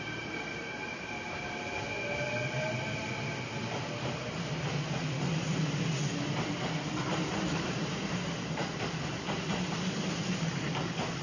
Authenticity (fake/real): real